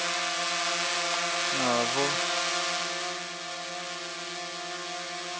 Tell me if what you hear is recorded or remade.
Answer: recorded